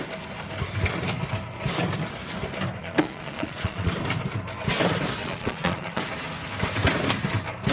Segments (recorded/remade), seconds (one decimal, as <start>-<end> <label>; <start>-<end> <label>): 0.0-2.8 recorded; 2.8-3.9 remade; 3.9-5.2 recorded; 5.2-6.0 remade; 6.0-7.7 recorded